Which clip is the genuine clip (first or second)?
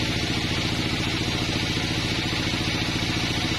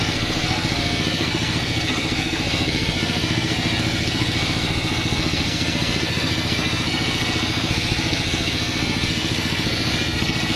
first